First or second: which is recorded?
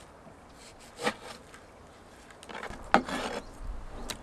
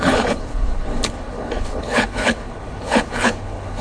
first